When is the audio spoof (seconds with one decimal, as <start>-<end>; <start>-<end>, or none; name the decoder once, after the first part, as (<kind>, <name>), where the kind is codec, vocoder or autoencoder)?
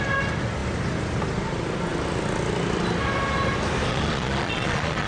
3.9-5.1 (vocoder, Vocos)